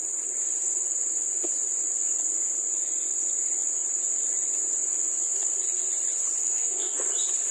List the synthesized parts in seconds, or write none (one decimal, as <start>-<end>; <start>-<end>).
6.4-7.1